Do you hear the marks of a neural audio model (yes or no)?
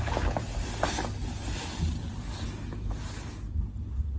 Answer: no